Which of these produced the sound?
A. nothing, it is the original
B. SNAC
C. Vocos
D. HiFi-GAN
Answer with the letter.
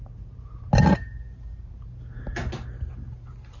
A